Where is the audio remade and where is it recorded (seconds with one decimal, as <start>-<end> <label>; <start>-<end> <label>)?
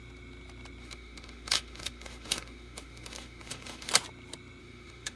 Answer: 0.0-0.8 recorded; 0.8-3.9 remade; 3.9-4.6 recorded; 4.6-5.2 remade